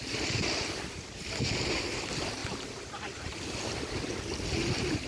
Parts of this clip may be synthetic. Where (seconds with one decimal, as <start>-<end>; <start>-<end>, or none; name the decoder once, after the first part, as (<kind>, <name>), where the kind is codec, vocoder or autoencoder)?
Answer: none